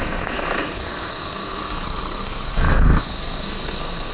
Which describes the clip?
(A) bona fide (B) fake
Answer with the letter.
B